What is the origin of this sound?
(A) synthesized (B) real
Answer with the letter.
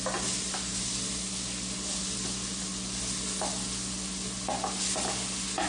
B